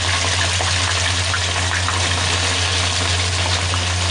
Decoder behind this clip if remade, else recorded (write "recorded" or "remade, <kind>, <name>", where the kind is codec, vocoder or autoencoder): recorded